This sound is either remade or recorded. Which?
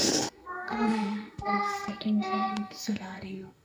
remade